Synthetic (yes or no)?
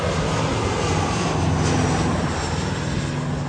no